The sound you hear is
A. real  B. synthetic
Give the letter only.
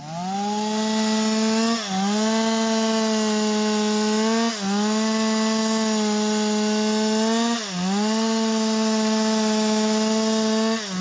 A